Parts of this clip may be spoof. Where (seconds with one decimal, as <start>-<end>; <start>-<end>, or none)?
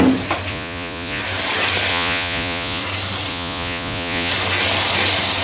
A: 0.5-1.2; 1.9-2.8; 3.3-4.3